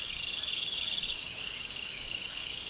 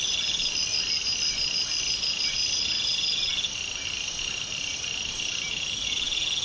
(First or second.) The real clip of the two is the second